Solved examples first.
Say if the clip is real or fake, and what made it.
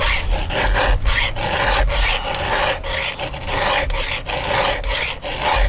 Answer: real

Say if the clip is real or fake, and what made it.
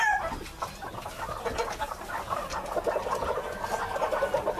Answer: real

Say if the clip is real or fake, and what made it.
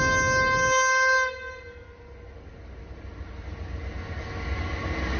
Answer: real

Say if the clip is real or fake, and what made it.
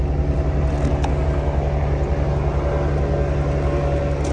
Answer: real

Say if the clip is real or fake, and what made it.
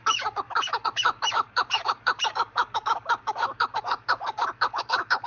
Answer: fake, codec, DAC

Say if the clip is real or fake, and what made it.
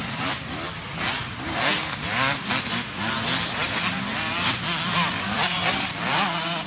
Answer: real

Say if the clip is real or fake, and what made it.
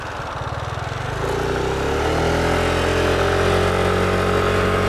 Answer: real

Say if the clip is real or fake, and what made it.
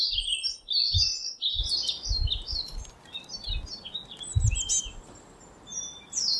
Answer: real